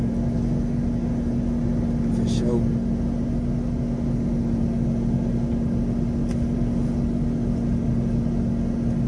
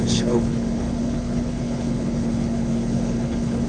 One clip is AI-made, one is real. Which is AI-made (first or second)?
second